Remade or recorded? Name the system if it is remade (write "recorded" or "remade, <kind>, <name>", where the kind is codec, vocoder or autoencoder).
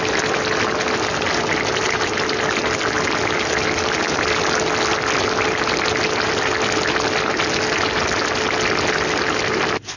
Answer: recorded